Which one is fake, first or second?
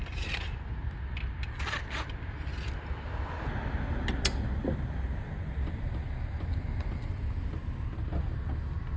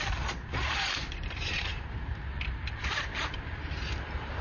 second